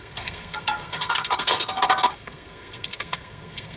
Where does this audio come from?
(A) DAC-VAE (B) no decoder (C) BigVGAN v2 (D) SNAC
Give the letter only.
D